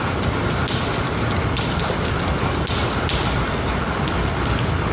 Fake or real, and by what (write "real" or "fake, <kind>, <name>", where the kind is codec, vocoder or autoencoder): real